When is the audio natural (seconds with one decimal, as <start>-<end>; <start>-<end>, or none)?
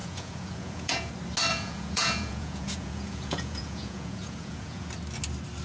1.1-1.5; 4.9-5.6